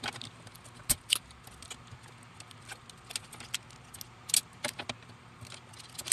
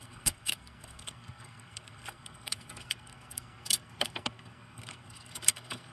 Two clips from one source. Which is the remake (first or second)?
second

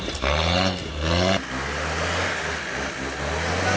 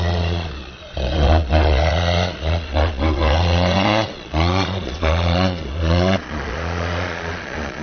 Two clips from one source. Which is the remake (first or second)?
second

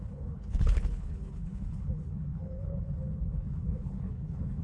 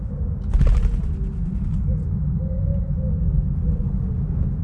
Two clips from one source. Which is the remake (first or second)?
first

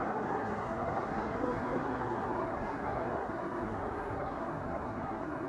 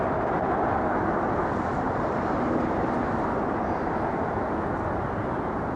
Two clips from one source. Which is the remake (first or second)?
first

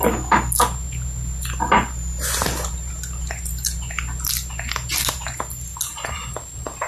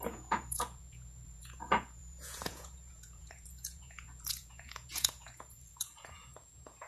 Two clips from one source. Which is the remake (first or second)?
second